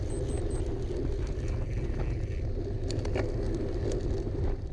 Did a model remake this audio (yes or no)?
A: no